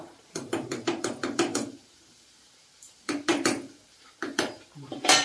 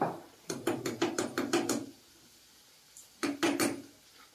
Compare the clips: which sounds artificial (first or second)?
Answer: first